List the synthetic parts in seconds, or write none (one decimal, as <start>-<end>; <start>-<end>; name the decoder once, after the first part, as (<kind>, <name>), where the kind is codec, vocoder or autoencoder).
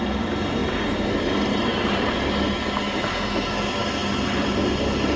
none